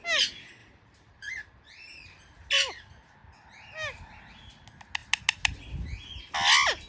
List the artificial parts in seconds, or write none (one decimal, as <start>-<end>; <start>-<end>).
0.6-2.5